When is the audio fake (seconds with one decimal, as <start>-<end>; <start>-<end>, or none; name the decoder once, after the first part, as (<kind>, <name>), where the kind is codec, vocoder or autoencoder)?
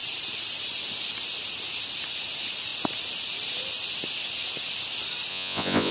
5.3-5.9 (vocoder, Vocos)